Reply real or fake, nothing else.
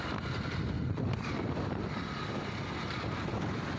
real